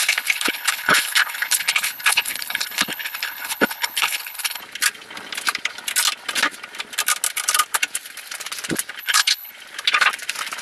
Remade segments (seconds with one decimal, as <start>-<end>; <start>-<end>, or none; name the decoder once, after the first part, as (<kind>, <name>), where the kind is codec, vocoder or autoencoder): 0.0-4.6 (codec, HILCodec); 9.0-9.5